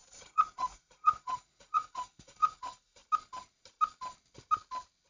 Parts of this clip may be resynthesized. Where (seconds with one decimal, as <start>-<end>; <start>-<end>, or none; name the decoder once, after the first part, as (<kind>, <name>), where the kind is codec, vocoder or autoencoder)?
0.0-3.0 (vocoder, Vocos)